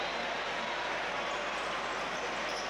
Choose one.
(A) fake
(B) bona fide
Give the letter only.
B